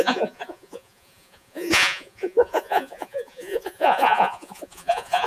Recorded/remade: remade